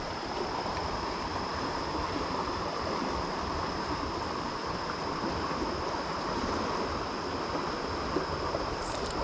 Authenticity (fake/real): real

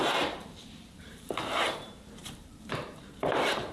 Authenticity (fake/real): fake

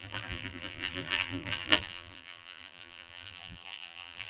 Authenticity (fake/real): fake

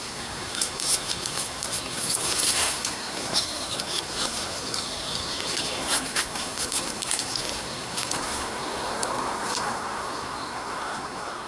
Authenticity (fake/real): fake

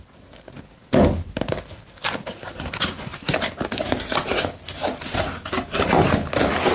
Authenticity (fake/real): real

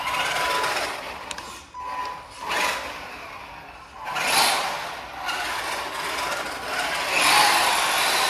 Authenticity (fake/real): real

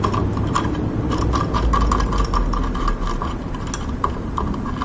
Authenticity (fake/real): real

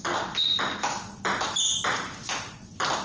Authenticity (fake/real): real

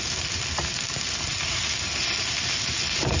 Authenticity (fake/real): real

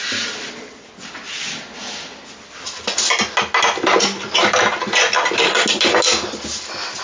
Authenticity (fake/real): real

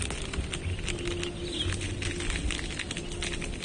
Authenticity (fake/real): real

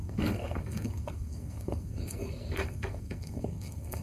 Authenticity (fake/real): fake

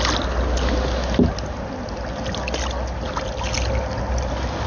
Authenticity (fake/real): real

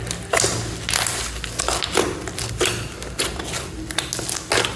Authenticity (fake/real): real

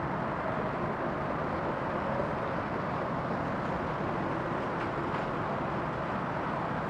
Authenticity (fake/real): real